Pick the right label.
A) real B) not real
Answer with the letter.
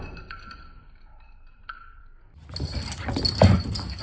A